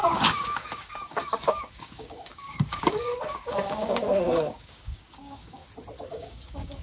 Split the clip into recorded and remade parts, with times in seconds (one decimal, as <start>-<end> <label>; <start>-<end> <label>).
0.0-5.6 remade; 5.6-6.1 recorded; 6.1-6.8 remade